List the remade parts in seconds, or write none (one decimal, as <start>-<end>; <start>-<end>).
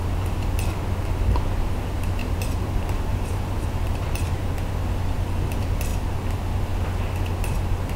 2.2-4.5